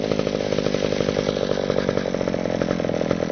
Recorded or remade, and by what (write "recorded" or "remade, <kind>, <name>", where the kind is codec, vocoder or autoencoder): recorded